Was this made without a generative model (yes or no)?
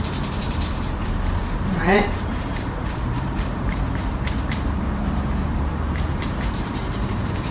no